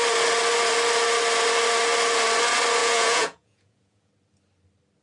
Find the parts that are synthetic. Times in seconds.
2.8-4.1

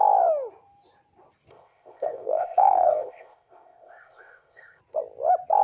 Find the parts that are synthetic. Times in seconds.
1.5-4.8

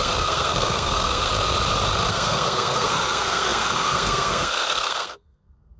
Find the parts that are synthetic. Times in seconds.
0.0-1.3; 2.1-5.8

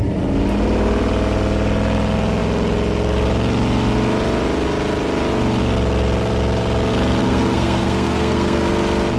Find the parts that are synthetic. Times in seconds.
7.2-8.7

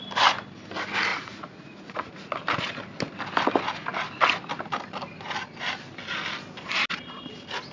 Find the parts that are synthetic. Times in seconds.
1.1-2.4

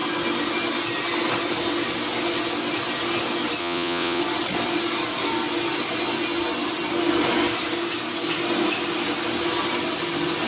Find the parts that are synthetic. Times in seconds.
3.6-4.2